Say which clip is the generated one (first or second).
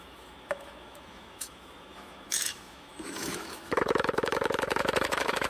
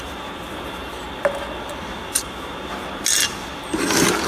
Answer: first